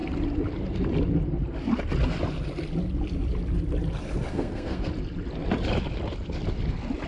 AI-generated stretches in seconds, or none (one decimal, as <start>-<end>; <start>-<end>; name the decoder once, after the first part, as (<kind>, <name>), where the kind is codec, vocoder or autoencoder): 4.3-4.9 (codec, SNAC)